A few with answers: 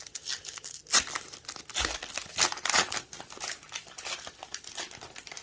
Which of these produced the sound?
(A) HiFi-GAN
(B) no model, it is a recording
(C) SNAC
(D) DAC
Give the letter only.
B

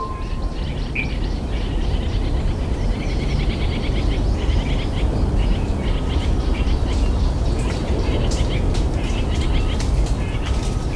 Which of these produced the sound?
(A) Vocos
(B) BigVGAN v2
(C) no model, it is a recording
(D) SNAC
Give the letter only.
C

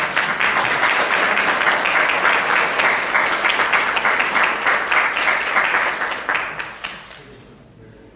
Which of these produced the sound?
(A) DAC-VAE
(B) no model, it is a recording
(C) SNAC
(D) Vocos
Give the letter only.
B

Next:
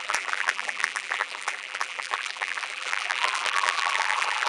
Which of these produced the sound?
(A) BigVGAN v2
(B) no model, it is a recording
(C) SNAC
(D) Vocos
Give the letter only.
A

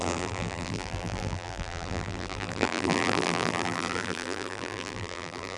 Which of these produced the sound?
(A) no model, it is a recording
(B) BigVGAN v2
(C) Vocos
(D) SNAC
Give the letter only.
B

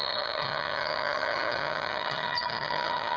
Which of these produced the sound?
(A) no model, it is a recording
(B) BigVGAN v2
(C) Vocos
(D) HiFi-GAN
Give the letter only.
D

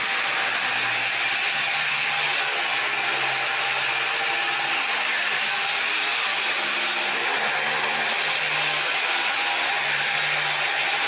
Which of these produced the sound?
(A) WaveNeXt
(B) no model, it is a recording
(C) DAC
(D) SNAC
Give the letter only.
B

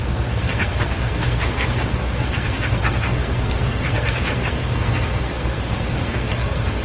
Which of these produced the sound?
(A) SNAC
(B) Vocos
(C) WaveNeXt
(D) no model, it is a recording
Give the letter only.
A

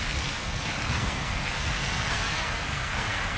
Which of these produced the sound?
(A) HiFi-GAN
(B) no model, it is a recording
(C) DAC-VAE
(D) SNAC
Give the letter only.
D